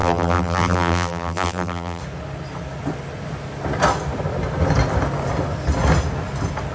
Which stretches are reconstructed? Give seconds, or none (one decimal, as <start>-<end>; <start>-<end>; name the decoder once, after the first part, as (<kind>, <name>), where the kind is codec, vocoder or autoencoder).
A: 0.0-2.0 (vocoder, BigVGAN v2)